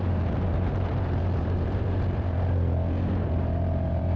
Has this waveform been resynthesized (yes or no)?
yes